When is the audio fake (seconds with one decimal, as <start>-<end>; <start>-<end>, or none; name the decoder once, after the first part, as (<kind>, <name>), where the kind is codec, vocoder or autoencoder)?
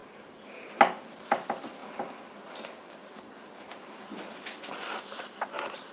none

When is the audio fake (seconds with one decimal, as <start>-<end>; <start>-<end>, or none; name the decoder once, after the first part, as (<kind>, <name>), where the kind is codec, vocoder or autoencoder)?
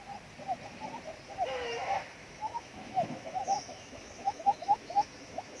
2.2-5.6 (autoencoder, DAC-VAE)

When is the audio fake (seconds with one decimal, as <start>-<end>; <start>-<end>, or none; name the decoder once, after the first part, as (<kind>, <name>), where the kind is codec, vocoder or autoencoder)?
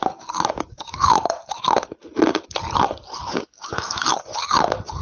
0.0-1.1 (codec, DAC); 3.2-4.2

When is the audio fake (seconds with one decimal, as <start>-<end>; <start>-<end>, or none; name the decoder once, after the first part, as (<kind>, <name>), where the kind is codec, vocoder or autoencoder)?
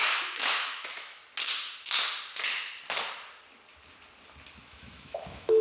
0.0-1.2 (autoencoder, DAC-VAE); 4.6-5.6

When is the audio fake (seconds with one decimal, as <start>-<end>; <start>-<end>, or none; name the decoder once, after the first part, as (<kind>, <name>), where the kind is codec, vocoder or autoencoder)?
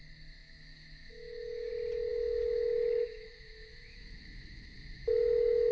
0.4-1.7 (autoencoder, DAC-VAE); 2.1-5.7